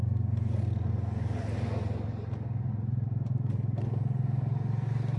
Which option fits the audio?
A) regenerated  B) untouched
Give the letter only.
B